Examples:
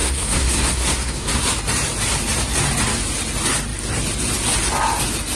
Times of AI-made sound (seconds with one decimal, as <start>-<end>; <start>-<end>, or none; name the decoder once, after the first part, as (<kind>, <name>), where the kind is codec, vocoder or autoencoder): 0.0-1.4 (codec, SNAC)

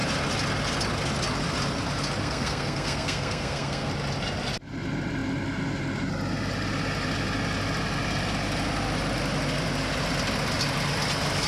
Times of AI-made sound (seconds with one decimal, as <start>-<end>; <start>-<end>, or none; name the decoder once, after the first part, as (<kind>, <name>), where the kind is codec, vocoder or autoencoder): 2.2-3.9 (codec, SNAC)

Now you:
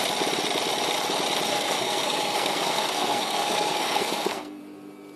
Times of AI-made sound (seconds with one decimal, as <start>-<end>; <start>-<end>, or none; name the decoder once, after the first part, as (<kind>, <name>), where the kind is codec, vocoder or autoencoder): 1.5-4.6 (codec, SNAC)

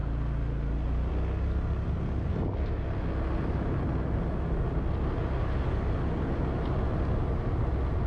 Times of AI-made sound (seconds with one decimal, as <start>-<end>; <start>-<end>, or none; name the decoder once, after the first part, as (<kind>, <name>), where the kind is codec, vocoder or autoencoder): none

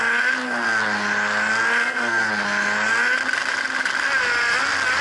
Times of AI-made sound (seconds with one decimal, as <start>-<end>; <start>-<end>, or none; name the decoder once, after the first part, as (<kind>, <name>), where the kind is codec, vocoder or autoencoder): 1.8-2.3 (codec, SNAC)